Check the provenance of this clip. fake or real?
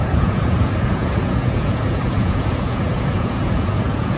fake